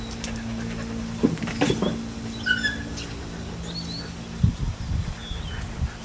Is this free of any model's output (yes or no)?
yes